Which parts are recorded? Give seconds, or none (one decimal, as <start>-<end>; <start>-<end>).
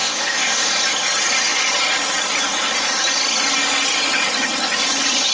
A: 0.7-5.3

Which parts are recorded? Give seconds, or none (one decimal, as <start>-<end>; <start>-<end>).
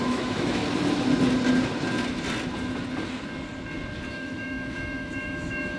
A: 0.6-4.1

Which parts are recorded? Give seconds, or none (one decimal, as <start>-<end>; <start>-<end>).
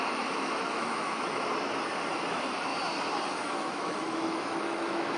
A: 1.4-2.3; 2.7-3.5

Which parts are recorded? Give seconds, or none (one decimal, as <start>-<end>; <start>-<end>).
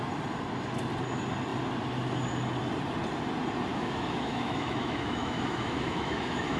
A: 0.0-3.7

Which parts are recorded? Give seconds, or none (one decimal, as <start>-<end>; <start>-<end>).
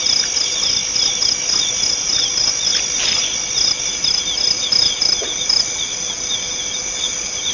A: 0.0-7.5